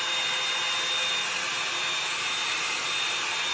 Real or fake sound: real